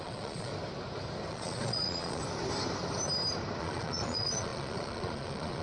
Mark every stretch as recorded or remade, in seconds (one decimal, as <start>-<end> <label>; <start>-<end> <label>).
0.0-0.5 remade; 0.5-1.3 recorded; 1.3-2.2 remade; 2.2-3.6 recorded; 3.6-5.6 remade